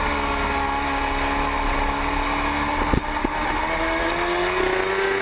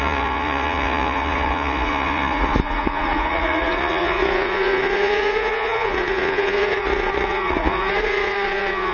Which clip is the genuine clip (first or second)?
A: first